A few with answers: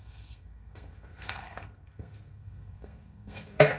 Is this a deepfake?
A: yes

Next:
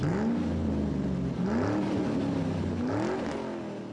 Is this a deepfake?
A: no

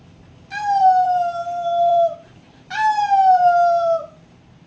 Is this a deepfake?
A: yes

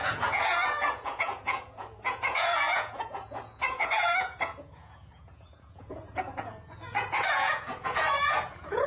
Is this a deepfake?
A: yes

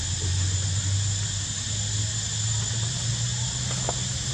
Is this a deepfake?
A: no